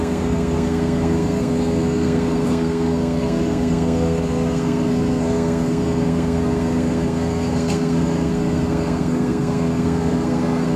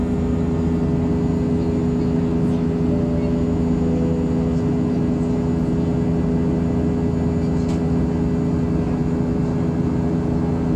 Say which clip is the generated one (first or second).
first